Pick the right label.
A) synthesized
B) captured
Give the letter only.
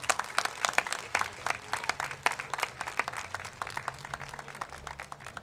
B